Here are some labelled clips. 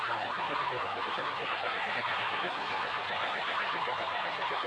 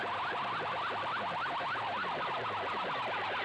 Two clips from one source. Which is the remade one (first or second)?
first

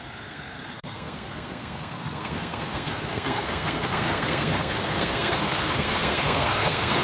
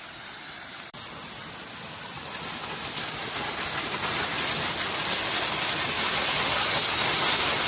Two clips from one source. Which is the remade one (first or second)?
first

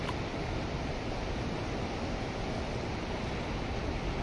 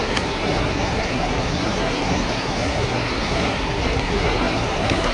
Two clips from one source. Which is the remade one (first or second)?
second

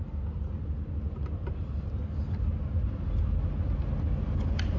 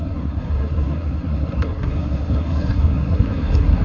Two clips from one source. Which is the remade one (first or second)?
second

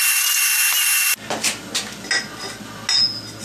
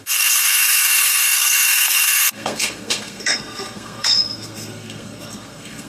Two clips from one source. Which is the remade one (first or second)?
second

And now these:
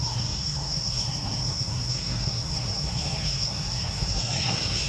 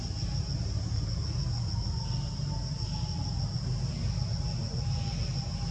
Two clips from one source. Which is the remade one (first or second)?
first